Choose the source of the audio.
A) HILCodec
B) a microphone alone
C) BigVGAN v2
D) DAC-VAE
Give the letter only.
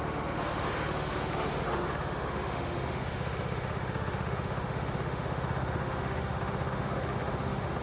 D